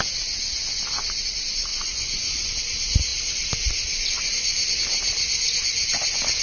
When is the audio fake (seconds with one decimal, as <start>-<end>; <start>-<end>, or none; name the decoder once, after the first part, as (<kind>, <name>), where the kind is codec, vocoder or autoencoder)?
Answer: 1.7-2.5 (vocoder, Vocos)